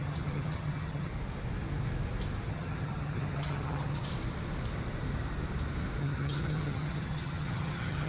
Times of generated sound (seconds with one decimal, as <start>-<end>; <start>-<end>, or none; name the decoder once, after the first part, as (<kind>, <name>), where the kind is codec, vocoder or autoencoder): 0.0-1.1 (vocoder, HiFi-GAN); 2.5-4.1; 6.0-8.1

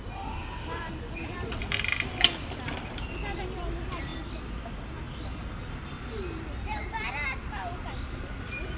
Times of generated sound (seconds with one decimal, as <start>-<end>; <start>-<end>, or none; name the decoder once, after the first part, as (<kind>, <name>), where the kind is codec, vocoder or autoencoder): none

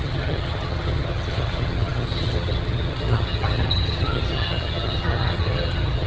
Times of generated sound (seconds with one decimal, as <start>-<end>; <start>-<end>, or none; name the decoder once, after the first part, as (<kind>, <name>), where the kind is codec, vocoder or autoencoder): 0.0-6.1 (vocoder, HiFi-GAN)